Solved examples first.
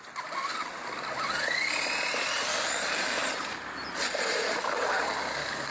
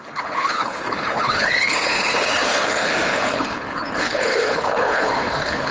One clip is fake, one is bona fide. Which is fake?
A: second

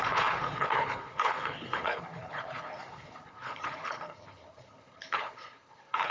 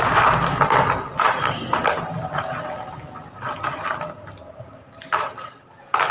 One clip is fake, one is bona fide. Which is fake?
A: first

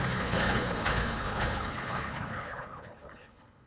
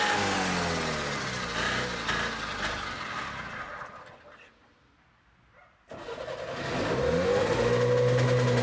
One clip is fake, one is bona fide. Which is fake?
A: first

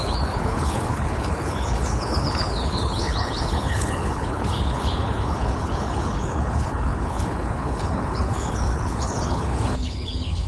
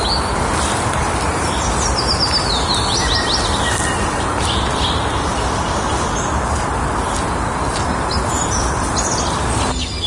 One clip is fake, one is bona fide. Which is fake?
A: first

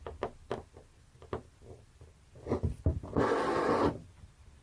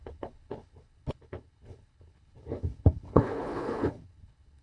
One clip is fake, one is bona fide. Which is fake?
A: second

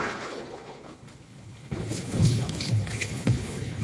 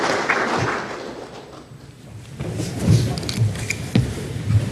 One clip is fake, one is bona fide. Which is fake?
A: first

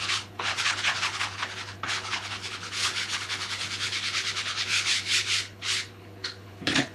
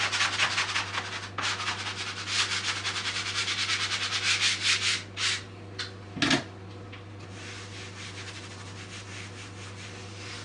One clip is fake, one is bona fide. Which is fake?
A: first